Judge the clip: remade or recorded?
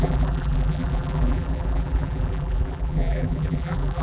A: remade